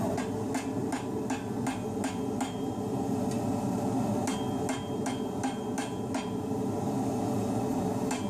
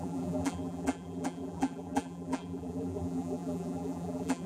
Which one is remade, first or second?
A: second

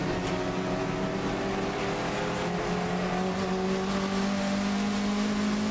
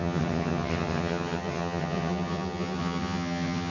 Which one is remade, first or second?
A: second